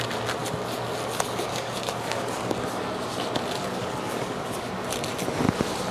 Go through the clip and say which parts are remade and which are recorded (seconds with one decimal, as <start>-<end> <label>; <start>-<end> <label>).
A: 0.0-1.5 recorded; 1.5-2.8 remade; 2.8-3.8 recorded; 3.8-4.7 remade; 4.7-5.9 recorded